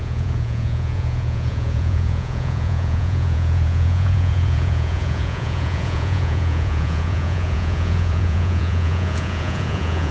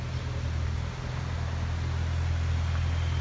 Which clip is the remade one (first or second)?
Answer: first